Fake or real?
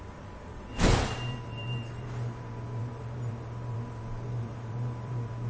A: fake